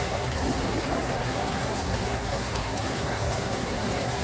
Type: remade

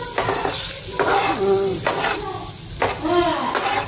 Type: recorded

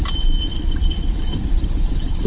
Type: remade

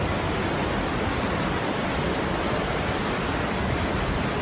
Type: recorded